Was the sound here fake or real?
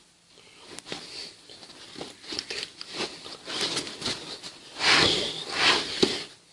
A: fake